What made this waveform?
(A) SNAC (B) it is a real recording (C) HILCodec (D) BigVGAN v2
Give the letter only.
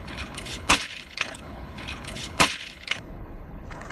C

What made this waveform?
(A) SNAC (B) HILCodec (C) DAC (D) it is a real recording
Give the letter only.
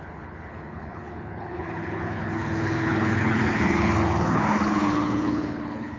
B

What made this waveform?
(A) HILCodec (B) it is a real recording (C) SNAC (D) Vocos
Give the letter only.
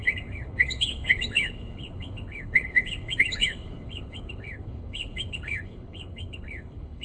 A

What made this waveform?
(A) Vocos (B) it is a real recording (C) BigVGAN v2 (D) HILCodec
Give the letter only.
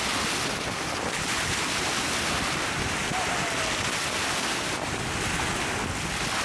B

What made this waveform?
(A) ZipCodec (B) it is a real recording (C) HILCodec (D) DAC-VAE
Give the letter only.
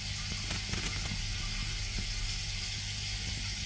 B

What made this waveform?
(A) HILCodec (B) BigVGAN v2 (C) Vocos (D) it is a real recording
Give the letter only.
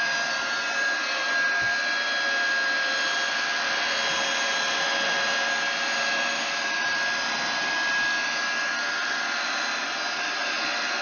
D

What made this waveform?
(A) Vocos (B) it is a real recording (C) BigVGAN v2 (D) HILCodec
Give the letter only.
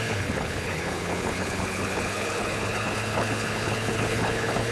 D